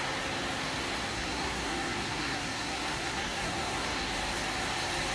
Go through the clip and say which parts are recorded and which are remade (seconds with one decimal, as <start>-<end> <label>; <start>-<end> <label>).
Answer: 0.0-1.1 recorded; 1.1-4.1 remade; 4.1-5.1 recorded